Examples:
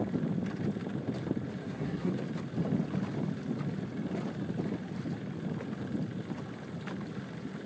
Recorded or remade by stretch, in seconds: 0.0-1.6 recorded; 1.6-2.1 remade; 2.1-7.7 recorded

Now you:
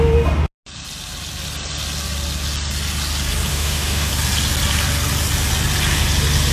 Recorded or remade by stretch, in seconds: 0.0-3.5 recorded; 3.5-4.1 remade; 4.1-6.5 recorded